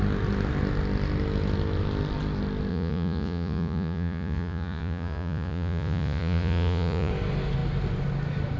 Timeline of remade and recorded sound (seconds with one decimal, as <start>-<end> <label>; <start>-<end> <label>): 0.0-2.7 recorded; 2.7-7.1 remade; 7.1-8.6 recorded